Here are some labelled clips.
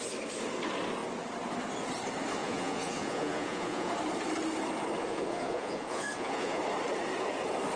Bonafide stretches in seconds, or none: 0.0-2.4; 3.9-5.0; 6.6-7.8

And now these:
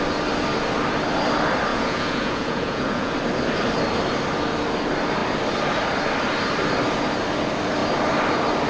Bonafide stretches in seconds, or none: 0.0-1.7; 3.1-8.7

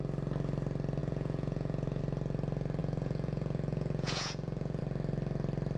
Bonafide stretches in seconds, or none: 0.0-1.0; 2.0-2.8; 4.8-5.8